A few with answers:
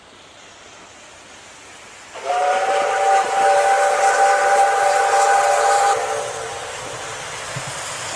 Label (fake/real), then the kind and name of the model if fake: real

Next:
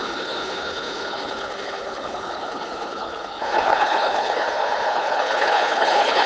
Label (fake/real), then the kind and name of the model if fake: fake, codec, HILCodec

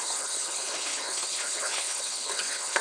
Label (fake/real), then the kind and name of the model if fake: fake, codec, HILCodec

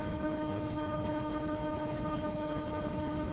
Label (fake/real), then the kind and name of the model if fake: fake, codec, HILCodec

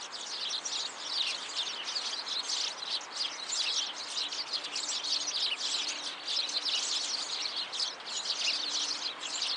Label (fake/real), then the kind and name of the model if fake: real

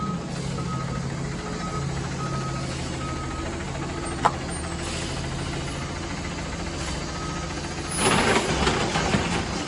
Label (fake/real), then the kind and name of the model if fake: real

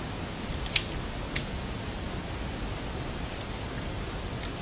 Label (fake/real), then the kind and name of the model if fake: real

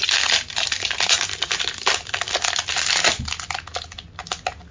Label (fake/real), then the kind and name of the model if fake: real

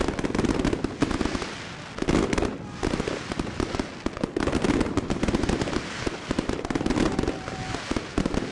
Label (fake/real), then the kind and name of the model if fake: real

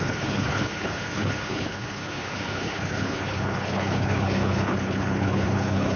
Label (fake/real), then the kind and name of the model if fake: fake, codec, HILCodec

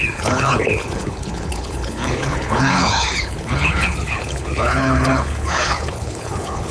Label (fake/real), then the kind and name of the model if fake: fake, codec, HILCodec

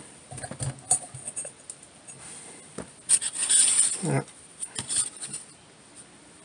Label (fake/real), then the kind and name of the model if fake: real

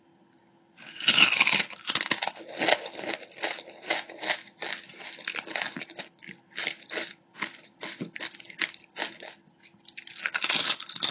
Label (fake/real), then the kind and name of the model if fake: real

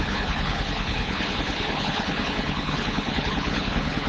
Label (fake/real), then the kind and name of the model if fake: fake, codec, HILCodec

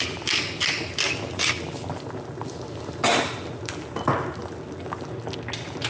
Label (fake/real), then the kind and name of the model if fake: real